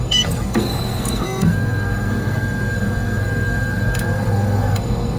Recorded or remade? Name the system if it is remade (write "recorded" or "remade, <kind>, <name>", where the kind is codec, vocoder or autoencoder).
remade, codec, SNAC